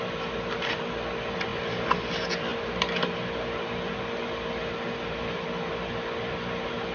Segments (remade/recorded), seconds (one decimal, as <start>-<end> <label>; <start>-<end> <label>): 0.0-6.9 recorded

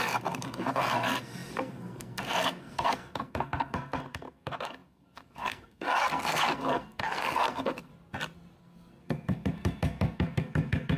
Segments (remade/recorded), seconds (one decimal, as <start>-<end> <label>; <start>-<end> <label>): 0.0-7.9 remade; 7.9-8.6 recorded; 8.6-11.0 remade